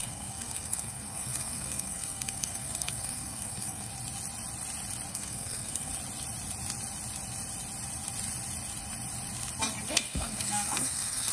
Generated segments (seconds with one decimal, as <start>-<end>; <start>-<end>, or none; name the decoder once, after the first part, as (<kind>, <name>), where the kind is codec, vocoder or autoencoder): 0.0-3.9 (codec, SNAC); 5.1-5.9; 9.9-11.3